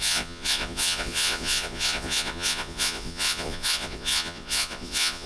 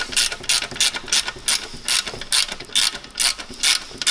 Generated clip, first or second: first